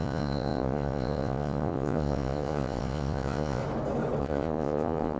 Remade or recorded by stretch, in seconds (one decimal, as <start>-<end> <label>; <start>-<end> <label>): 0.0-3.6 remade; 3.6-4.2 recorded; 4.2-5.2 remade